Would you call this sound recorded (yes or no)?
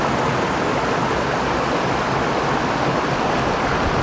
yes